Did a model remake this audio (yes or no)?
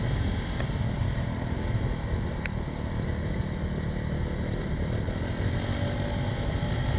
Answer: no